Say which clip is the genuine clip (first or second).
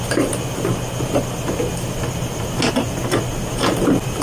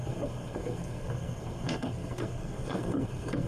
first